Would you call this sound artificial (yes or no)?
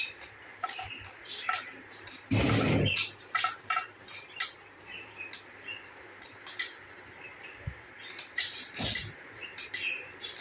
yes